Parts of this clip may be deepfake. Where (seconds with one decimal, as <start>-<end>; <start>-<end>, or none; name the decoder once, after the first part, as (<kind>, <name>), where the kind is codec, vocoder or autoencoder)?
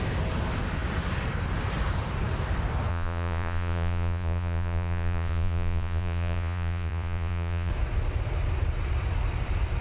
2.9-7.7 (vocoder, Vocos)